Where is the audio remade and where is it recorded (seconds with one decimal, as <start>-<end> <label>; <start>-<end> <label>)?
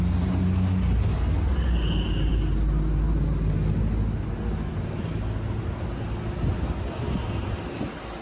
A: 0.0-8.2 recorded